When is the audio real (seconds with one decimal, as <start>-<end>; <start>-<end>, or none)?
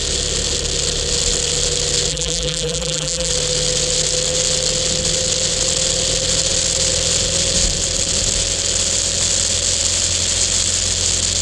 0.0-2.1; 3.3-11.4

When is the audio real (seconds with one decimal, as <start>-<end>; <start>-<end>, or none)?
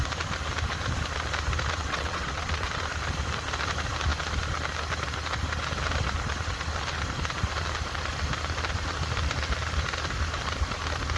0.0-1.8; 2.8-11.2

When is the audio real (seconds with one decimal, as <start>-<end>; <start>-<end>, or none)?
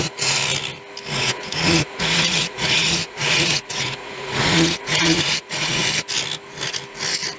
0.4-1.1; 5.8-7.4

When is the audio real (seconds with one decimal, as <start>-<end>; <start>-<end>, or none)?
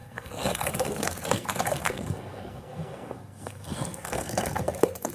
none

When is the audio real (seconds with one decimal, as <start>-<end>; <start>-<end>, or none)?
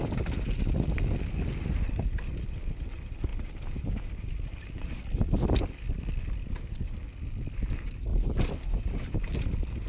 0.0-3.3; 5.0-8.1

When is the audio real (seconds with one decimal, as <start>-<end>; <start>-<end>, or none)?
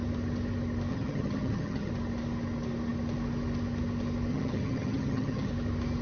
0.0-0.9; 1.9-4.3; 5.5-6.0